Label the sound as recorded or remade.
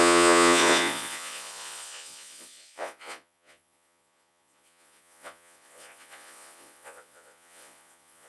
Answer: remade